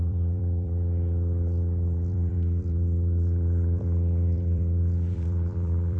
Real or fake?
fake